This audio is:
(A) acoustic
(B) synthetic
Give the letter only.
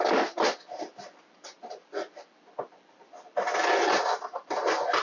A